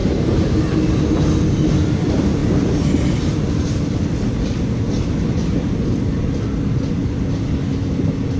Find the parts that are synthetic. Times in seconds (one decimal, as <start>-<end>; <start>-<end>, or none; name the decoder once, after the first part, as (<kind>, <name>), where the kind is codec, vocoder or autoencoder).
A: 0.0-0.8 (vocoder, BigVGAN v2)

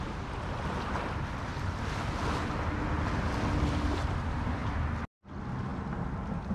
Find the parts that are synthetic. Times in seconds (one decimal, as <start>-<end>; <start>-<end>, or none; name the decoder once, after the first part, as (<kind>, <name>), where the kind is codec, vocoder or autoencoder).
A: none

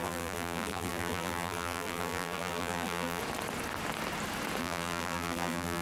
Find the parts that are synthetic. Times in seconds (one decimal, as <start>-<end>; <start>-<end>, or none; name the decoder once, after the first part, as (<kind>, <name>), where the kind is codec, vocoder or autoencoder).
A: 0.0-3.2 (vocoder, BigVGAN v2); 4.6-5.8

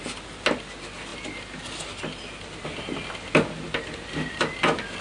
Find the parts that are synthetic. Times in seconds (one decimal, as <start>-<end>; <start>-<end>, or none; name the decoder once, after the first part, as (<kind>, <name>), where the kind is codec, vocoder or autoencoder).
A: none

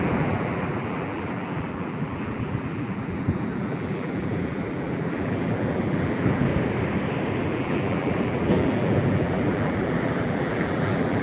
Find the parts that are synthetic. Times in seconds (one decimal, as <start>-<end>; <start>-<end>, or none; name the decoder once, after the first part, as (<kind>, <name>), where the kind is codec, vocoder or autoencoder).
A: 0.0-6.5 (vocoder, BigVGAN v2); 7.4-11.2

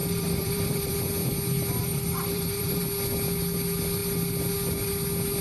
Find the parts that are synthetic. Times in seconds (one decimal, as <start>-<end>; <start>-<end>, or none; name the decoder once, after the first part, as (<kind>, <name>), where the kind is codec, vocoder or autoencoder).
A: 0.0-0.9 (vocoder, BigVGAN v2); 1.8-2.8